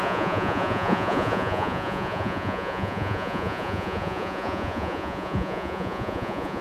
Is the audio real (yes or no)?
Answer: no